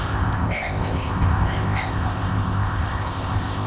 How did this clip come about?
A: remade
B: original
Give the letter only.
A